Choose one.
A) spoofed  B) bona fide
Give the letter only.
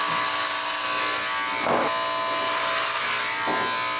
B